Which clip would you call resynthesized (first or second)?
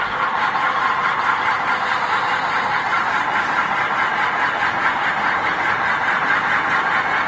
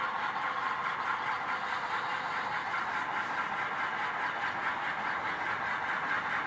first